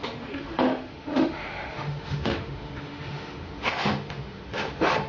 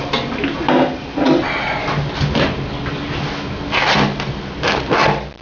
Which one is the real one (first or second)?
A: second